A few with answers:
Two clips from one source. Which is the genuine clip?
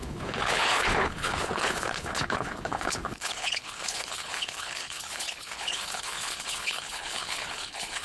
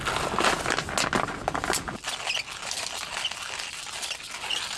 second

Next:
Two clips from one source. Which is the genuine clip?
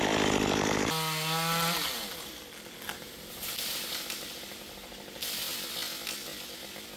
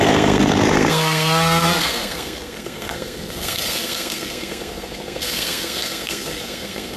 first